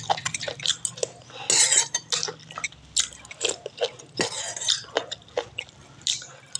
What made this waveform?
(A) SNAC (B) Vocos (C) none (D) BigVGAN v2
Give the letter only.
C